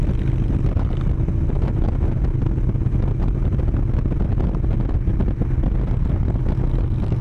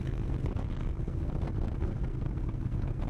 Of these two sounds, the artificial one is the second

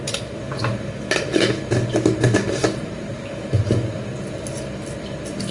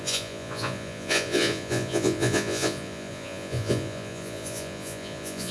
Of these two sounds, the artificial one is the second